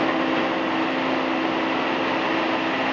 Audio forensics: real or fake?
real